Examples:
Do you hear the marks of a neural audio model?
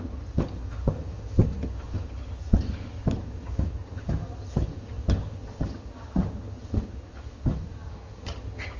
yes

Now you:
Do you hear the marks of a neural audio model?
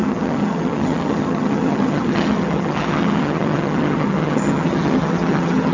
yes